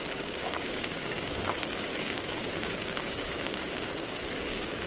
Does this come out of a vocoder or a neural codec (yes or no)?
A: yes